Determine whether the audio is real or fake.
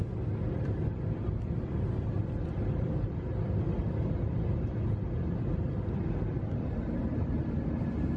real